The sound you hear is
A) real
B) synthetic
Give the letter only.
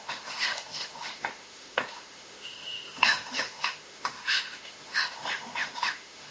B